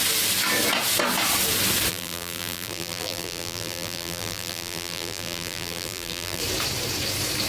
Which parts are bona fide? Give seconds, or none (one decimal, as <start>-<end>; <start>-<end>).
0.0-1.9; 6.4-7.5